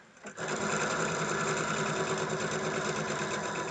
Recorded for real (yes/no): yes